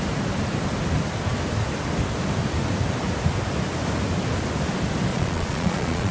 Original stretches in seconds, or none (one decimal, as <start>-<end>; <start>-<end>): 0.0-5.1